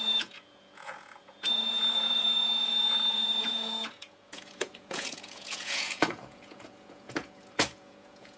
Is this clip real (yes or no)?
no